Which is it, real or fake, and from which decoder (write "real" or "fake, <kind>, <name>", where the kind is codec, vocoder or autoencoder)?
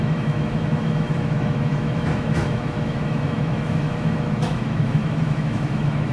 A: fake, autoencoder, DAC-VAE